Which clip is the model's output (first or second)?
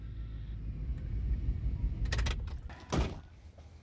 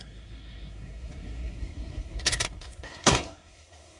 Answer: second